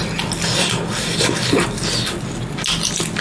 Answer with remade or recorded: recorded